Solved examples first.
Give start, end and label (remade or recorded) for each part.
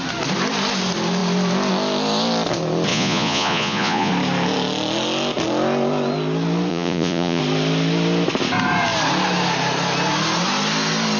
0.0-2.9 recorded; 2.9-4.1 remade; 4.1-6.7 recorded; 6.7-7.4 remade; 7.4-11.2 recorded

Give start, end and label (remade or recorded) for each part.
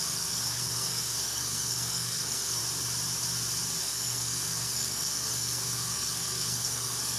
0.0-2.6 remade; 2.6-3.8 recorded; 3.8-7.2 remade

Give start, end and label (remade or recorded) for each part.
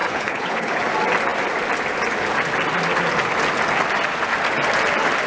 0.0-0.8 remade; 0.8-5.3 recorded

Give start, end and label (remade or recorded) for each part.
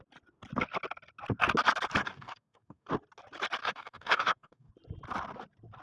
0.0-2.0 recorded; 2.0-2.9 remade; 2.9-3.6 recorded; 3.6-4.7 remade; 4.7-5.8 recorded